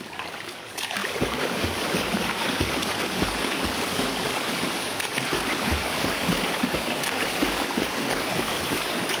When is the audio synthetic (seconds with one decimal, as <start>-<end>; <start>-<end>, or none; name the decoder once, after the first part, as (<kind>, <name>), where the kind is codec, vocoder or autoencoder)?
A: 0.0-9.2 (codec, DAC)